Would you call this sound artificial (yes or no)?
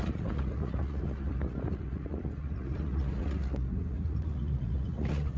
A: yes